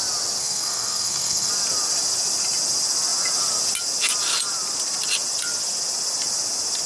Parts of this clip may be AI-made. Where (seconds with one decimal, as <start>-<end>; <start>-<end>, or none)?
0.4-1.5